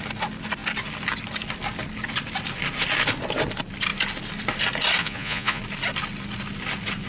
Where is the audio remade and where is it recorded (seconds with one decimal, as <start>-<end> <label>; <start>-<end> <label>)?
0.0-5.0 recorded; 5.0-5.6 remade; 5.6-7.1 recorded